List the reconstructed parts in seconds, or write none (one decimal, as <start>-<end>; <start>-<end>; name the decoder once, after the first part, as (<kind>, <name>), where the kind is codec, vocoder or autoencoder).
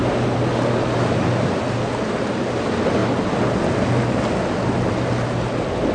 none